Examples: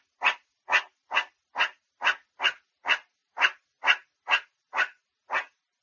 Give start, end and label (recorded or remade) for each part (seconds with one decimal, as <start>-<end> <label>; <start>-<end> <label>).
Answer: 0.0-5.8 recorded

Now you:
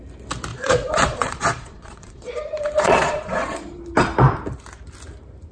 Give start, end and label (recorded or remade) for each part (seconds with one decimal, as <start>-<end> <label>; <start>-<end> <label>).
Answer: 0.0-0.5 recorded; 0.5-3.8 remade; 3.8-5.5 recorded

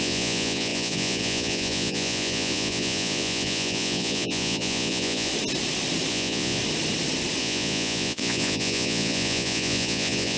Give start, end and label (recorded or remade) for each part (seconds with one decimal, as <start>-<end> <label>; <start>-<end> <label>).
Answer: 0.0-5.3 remade; 5.3-6.1 recorded; 6.1-6.6 remade; 6.6-7.4 recorded; 7.4-10.4 remade

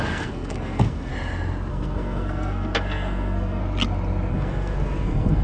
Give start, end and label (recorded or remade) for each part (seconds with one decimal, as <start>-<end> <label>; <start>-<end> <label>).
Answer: 0.0-1.1 remade; 1.1-1.7 recorded; 1.7-3.6 remade; 3.6-4.3 recorded; 4.3-5.4 remade